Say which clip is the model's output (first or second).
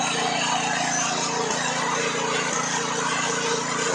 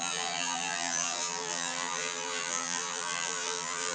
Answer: second